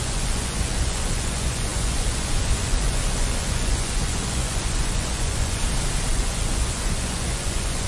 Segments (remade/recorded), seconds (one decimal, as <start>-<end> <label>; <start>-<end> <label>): 0.0-5.6 remade; 5.6-6.1 recorded; 6.1-7.9 remade